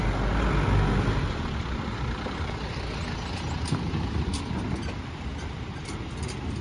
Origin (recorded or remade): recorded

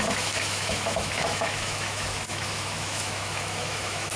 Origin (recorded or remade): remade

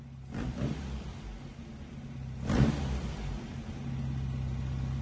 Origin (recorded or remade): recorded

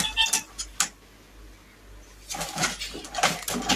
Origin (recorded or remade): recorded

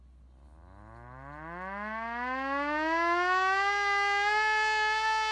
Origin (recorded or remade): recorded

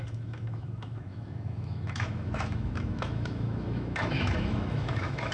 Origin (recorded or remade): remade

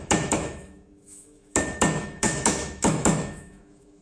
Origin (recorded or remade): remade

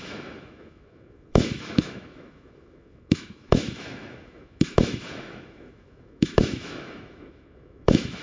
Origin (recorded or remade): remade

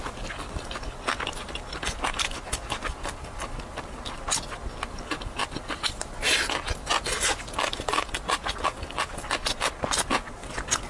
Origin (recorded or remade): recorded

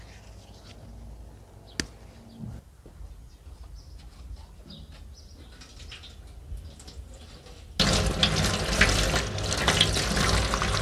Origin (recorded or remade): recorded